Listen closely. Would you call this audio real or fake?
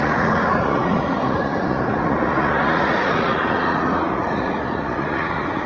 fake